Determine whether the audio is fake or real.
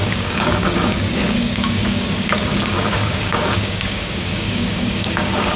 fake